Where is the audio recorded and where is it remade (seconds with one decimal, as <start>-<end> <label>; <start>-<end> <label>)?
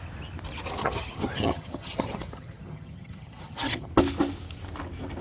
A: 0.0-0.8 recorded; 0.8-3.9 remade; 3.9-5.2 recorded